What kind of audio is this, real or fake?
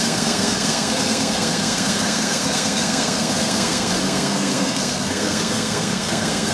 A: fake